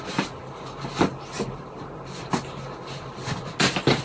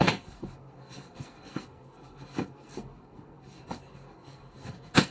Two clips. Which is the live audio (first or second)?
first